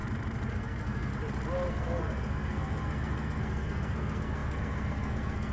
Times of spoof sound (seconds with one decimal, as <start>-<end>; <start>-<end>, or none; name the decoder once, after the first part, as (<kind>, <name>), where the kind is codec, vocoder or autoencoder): 0.5-1.1 (codec, SNAC); 1.7-5.5